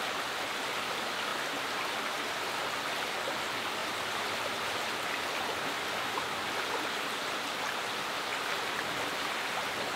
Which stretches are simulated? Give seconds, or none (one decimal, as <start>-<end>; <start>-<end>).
1.3-2.6; 3.8-4.3